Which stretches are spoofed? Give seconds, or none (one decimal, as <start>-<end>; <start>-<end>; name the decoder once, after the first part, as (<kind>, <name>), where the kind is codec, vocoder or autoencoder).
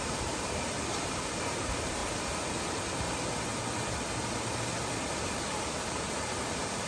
0.0-2.0 (vocoder, BigVGAN v2); 5.2-6.9